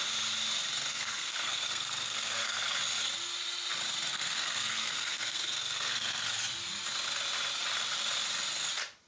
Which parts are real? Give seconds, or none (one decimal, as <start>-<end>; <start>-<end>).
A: 0.0-0.9; 2.8-4.1; 6.3-9.1